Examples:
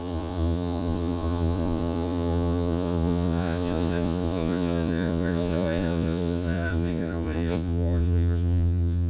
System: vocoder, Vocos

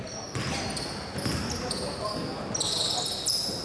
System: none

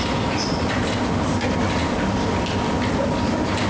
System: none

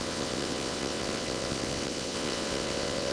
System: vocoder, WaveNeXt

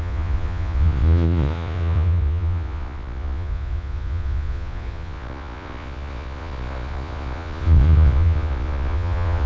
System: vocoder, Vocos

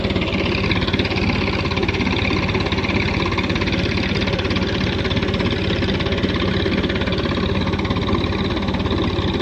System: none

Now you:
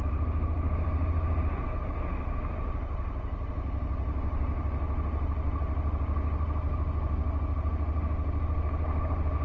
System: none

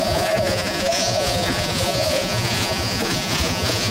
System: vocoder, Vocos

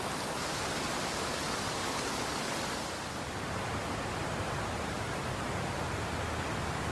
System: none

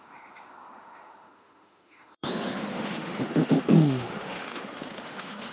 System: autoencoder, DAC-VAE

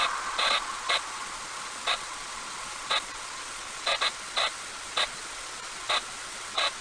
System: vocoder, Vocos